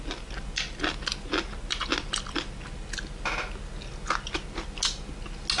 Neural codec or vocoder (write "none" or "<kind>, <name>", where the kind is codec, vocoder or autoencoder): none